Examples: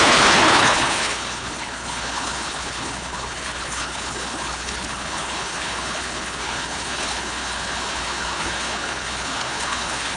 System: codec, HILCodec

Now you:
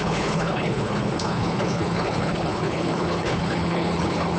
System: codec, HILCodec